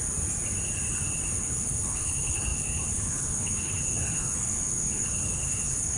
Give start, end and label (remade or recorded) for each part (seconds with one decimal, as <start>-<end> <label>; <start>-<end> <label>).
0.0-1.4 recorded; 1.4-6.0 remade